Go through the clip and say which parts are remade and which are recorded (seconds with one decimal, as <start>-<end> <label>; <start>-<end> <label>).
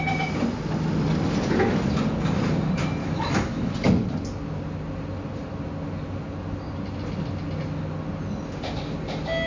0.0-3.0 recorded; 3.0-3.7 remade; 3.7-9.5 recorded